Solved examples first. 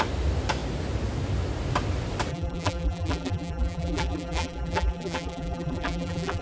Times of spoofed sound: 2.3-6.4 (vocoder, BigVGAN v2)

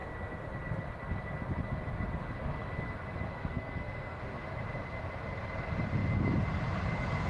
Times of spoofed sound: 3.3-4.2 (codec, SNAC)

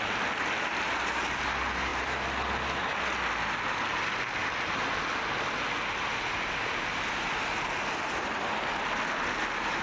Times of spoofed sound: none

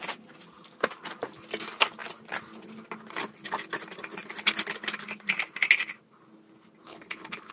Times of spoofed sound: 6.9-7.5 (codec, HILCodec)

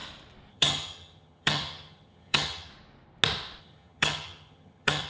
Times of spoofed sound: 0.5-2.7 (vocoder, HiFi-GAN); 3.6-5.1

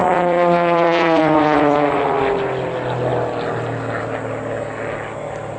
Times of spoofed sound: 0.0-2.2 (vocoder, Vocos)

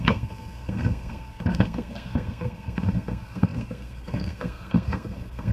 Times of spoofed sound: 0.0-5.5 (codec, SNAC)